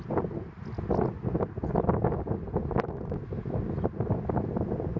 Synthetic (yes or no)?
no